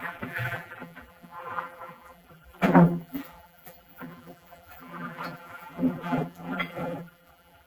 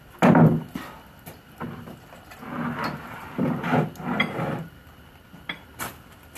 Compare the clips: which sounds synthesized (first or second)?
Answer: first